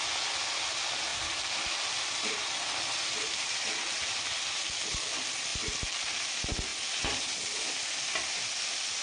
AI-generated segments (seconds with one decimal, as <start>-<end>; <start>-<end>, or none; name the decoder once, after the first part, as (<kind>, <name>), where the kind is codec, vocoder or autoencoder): 1.1-5.0 (vocoder, BigVGAN v2); 5.5-6.3